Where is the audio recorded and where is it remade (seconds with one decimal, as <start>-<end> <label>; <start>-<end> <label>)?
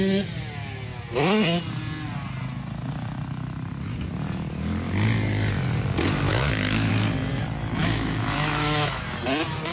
0.0-6.3 recorded; 6.3-6.9 remade; 6.9-7.8 recorded; 7.8-9.0 remade; 9.0-9.7 recorded